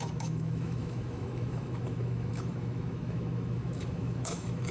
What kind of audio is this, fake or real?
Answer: fake